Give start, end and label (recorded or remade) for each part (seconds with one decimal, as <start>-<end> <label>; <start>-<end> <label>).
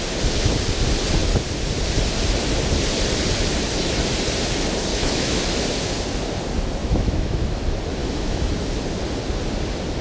0.0-4.9 recorded; 4.9-5.4 remade; 5.4-6.8 recorded; 6.8-7.6 remade; 7.6-8.0 recorded; 8.0-8.5 remade; 8.5-10.0 recorded